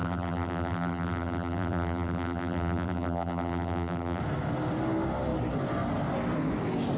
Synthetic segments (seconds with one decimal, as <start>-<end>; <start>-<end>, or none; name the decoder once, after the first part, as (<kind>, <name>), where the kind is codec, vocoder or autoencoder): 0.0-4.2 (vocoder, BigVGAN v2)